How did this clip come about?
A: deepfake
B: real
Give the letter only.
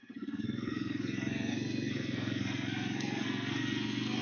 A